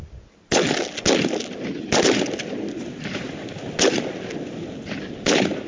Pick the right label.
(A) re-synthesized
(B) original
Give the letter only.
B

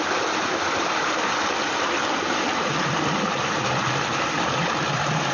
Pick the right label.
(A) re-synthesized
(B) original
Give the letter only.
B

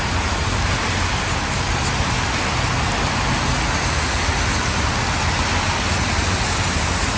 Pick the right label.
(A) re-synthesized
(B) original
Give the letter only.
B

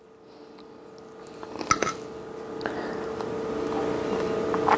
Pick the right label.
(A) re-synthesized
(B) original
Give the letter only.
B